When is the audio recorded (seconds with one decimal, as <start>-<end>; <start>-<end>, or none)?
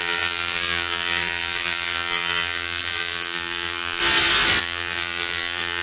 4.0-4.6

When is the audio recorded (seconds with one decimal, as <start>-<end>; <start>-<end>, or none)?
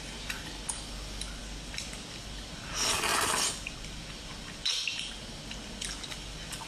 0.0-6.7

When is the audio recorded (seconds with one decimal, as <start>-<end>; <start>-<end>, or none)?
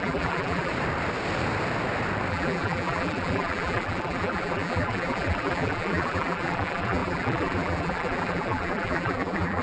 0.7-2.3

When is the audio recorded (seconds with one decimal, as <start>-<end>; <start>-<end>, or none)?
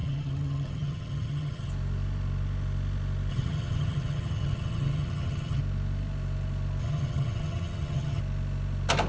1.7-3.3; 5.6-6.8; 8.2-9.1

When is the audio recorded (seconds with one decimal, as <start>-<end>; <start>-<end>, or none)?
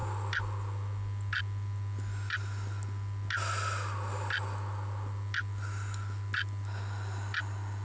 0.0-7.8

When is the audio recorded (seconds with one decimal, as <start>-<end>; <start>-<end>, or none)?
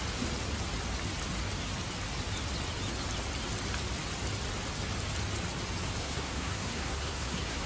0.0-6.0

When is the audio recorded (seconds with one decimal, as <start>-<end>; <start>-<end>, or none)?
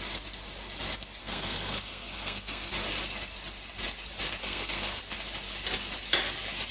0.0-1.2; 2.7-4.4; 5.0-6.7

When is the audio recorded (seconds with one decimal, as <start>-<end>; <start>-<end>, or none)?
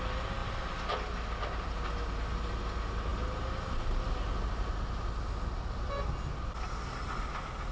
0.0-7.7